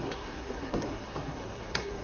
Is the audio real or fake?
fake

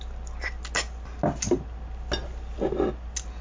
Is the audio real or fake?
real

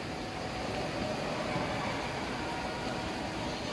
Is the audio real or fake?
real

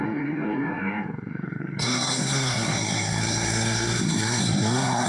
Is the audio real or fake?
fake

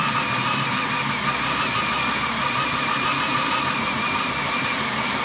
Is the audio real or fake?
real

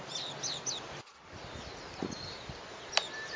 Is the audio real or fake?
real